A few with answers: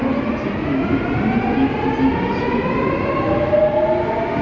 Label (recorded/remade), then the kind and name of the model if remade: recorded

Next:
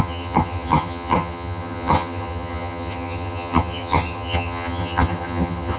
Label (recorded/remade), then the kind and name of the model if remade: remade, vocoder, HiFi-GAN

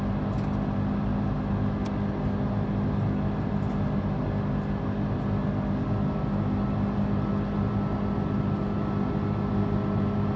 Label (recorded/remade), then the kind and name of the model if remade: recorded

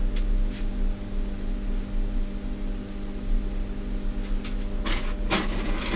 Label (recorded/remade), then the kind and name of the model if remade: recorded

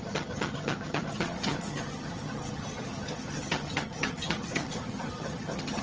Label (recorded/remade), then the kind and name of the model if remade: remade, vocoder, HiFi-GAN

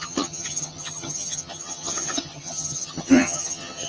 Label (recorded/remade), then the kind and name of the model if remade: remade, vocoder, HiFi-GAN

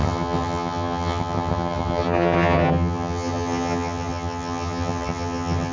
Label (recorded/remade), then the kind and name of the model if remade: remade, vocoder, HiFi-GAN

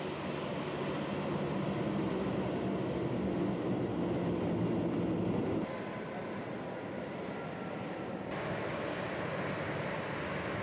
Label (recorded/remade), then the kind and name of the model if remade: recorded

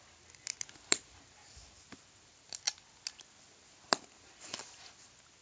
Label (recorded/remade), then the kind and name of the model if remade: recorded